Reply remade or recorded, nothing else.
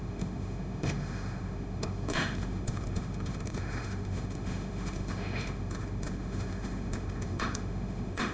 remade